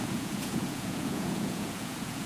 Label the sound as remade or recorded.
remade